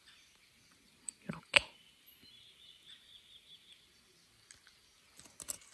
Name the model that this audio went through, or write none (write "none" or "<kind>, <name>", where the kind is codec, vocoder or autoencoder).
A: none